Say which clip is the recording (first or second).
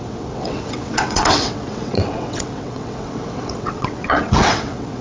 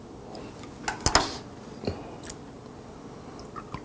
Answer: second